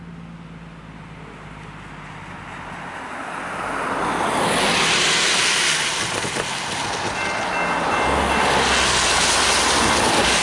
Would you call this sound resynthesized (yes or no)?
no